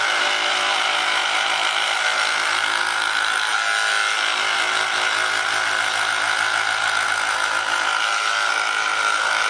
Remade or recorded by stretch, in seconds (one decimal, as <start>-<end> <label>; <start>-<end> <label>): 0.0-9.5 recorded